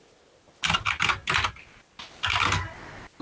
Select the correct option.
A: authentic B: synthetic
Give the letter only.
A